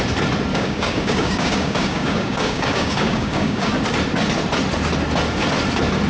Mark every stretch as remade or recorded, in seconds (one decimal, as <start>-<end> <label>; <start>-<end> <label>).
0.0-0.5 recorded; 0.5-3.7 remade; 3.7-6.1 recorded